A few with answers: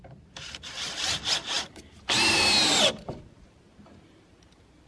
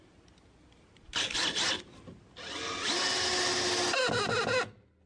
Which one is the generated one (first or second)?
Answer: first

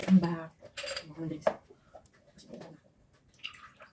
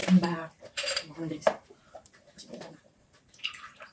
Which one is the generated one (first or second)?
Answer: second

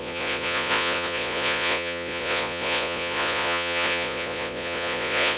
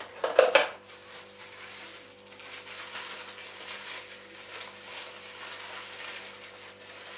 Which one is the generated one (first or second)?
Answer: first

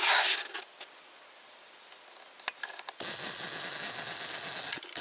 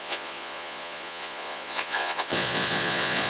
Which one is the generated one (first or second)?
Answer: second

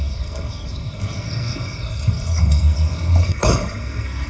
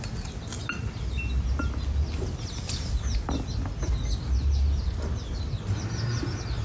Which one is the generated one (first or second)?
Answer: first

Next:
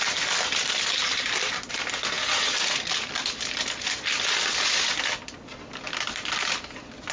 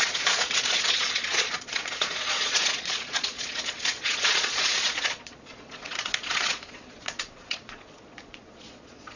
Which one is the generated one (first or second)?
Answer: second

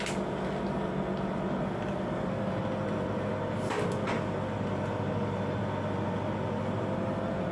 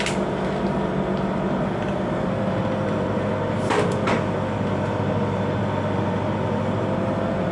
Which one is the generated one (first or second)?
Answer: second